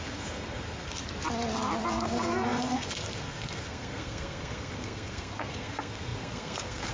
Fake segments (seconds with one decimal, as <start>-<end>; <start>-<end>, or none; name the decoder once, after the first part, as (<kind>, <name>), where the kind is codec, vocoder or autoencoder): 0.0-1.0 (codec, SNAC); 1.9-6.9